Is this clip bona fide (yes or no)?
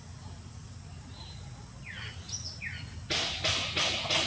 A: yes